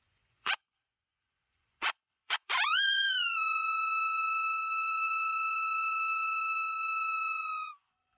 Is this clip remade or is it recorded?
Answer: remade